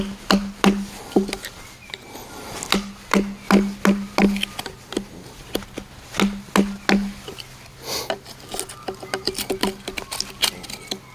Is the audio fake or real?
real